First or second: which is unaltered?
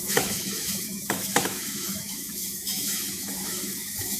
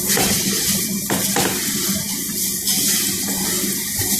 second